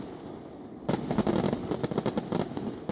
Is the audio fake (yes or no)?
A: no